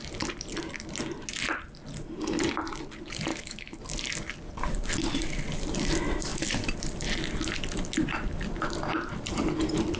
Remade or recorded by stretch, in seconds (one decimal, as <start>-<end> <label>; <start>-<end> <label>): 0.0-3.3 recorded; 3.3-3.8 remade; 3.8-10.0 recorded